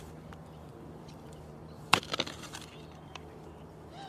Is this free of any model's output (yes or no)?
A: no